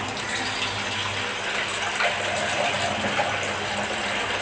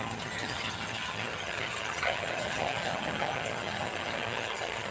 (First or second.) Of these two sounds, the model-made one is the second